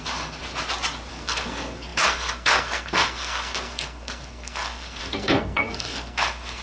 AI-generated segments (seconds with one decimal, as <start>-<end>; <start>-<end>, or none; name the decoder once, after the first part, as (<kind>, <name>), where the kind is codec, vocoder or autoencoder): 0.0-0.4 (codec, SNAC); 1.1-6.6